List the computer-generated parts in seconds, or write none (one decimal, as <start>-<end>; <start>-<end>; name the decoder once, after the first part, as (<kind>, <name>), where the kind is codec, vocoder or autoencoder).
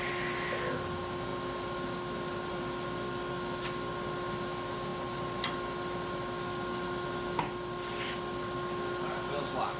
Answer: none